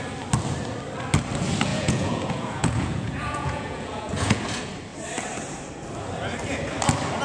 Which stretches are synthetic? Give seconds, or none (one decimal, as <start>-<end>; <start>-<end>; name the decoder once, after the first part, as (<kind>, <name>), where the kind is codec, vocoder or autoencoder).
1.7-4.4 (vocoder, Vocos)